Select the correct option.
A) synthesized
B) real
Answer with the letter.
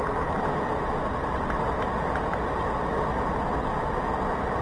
B